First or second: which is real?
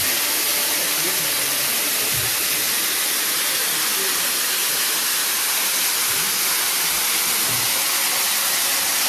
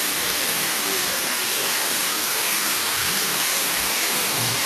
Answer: first